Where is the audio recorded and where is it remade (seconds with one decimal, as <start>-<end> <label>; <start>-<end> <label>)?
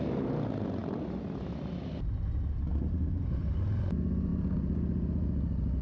0.0-5.8 recorded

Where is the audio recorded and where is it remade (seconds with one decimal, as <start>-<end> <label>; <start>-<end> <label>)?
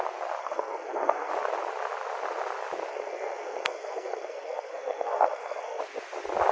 0.0-0.4 recorded; 0.4-1.3 remade; 1.3-2.9 recorded; 2.9-5.8 remade; 5.8-6.5 recorded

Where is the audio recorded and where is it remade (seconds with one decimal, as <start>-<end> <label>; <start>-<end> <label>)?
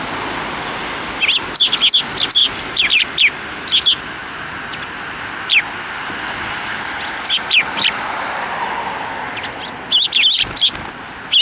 0.0-11.4 recorded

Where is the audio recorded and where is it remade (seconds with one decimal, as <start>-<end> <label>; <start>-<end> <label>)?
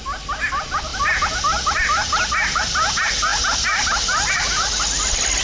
0.0-5.4 recorded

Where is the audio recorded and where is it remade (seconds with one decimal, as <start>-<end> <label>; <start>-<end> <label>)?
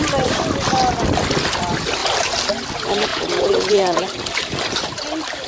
0.0-3.1 recorded; 3.1-4.1 remade; 4.1-5.5 recorded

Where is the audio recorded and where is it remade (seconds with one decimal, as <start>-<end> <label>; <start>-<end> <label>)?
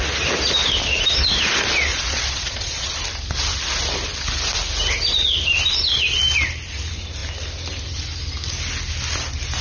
0.0-1.9 recorded; 1.9-3.0 remade; 3.0-9.6 recorded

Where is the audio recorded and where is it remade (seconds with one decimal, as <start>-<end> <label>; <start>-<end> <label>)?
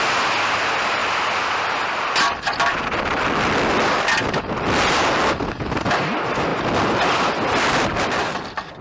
0.0-8.8 recorded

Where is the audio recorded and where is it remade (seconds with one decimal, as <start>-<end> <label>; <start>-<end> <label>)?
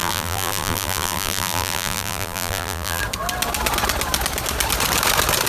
0.0-3.0 remade; 3.0-5.5 recorded